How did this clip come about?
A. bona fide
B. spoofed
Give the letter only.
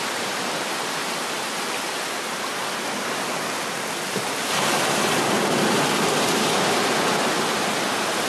A